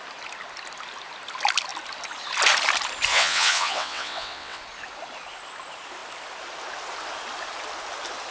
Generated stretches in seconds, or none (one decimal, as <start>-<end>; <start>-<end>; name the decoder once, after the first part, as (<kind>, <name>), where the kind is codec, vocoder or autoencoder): 3.1-4.6 (vocoder, WaveNeXt)